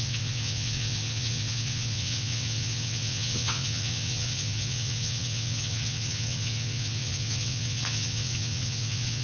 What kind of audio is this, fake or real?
fake